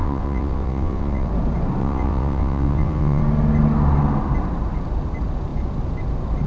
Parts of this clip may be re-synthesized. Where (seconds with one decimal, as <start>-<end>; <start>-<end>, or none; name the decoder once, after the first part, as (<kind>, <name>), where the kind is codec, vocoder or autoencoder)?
0.0-1.3 (vocoder, WaveNeXt); 1.8-3.2